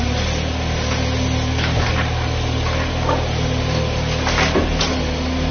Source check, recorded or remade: recorded